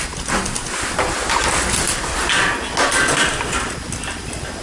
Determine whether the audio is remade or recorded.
recorded